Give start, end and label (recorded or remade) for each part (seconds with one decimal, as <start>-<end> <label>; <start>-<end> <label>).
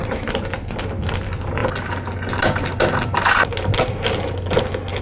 0.0-5.0 recorded